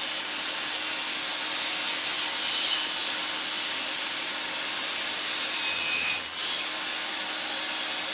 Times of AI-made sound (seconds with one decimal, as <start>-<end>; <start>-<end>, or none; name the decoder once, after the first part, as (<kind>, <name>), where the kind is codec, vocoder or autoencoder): none